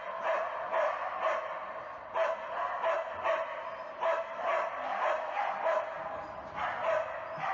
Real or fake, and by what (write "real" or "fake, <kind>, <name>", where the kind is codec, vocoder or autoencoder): real